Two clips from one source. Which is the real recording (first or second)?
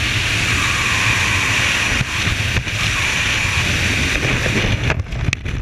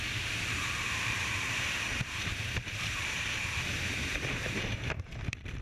first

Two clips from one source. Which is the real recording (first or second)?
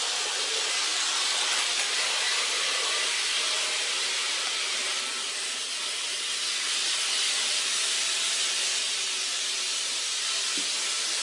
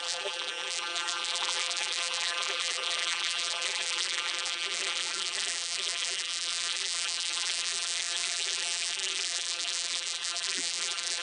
first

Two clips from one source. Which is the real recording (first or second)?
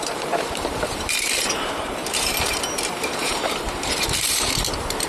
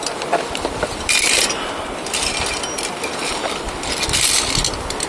second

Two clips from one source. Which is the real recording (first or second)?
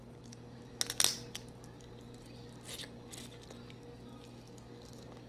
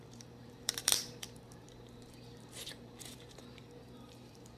first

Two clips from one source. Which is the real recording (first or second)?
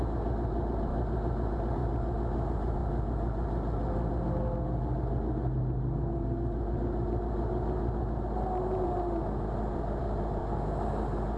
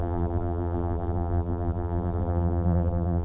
first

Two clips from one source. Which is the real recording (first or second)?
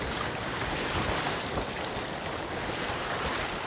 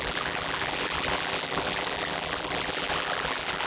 first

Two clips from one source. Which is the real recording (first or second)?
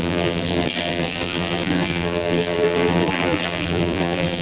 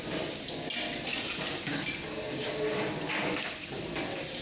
second